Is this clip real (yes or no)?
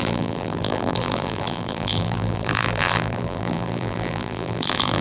no